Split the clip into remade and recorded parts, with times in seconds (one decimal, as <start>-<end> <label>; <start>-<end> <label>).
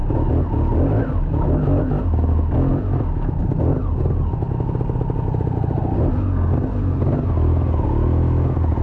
0.0-8.8 recorded